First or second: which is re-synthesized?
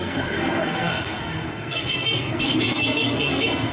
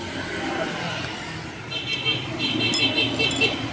first